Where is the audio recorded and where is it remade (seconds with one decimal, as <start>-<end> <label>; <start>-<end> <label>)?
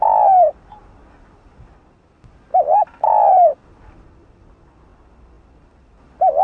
0.0-6.4 recorded